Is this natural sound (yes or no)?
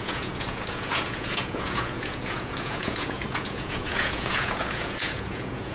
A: no